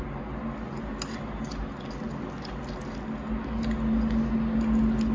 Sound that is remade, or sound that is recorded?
recorded